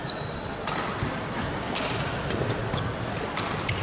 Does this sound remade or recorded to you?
recorded